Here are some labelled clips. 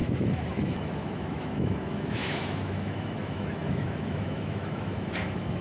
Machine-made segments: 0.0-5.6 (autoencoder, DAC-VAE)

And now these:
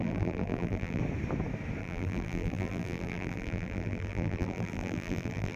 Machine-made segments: 0.0-1.0 (vocoder, BigVGAN v2); 1.8-5.6